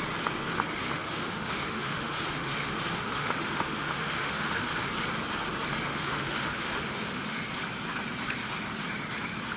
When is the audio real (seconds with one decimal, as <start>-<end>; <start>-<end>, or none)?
0.0-0.8; 4.9-5.9; 7.4-9.6